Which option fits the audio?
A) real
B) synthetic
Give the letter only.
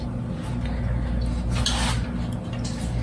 A